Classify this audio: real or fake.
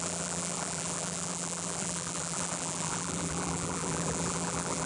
fake